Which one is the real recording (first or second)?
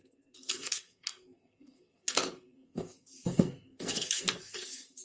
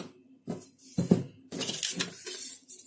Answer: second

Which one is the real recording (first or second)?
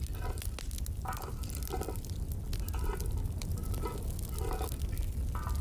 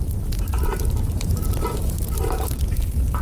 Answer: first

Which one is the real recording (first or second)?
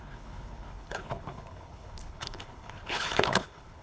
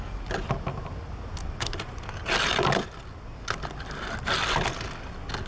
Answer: second